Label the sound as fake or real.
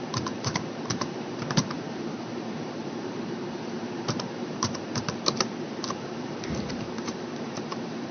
fake